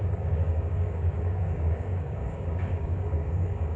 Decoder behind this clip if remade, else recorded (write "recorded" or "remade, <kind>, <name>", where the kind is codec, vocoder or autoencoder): remade, codec, DAC